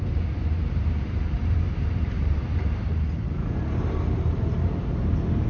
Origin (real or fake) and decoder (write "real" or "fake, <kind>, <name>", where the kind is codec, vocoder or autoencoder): fake, vocoder, BigVGAN v2